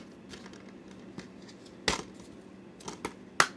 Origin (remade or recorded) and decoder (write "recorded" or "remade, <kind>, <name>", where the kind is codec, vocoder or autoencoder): recorded